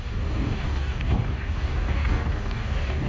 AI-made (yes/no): yes